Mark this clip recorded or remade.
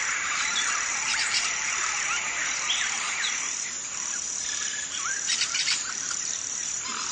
remade